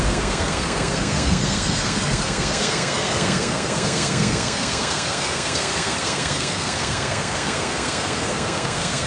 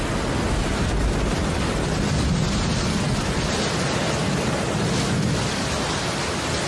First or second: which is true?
second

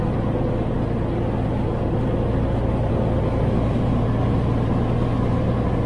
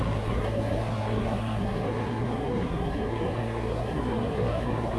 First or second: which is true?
first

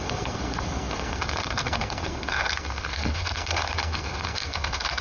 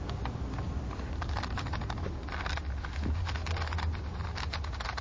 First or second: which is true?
second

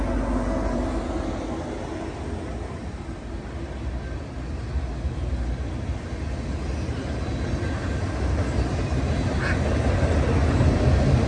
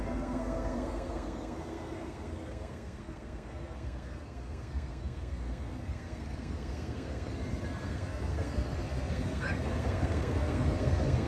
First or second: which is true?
first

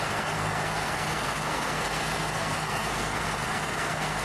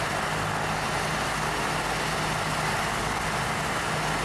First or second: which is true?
second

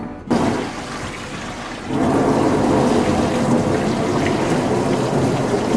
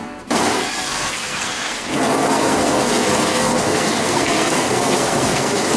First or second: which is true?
first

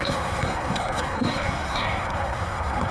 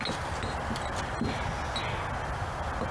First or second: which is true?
second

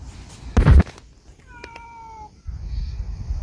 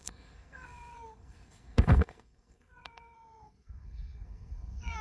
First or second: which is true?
first